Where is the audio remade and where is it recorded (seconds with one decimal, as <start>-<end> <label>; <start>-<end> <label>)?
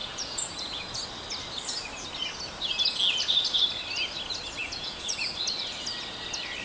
0.0-1.0 remade; 1.0-4.6 recorded; 4.6-5.2 remade; 5.2-6.6 recorded